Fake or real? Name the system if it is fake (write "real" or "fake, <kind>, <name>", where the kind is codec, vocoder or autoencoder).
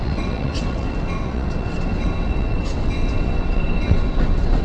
fake, vocoder, WaveNeXt